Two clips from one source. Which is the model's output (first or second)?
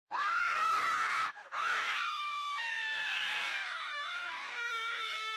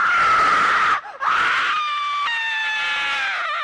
first